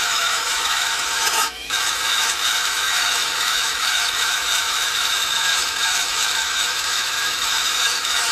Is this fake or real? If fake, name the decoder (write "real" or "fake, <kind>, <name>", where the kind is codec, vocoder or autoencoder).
fake, autoencoder, DAC-VAE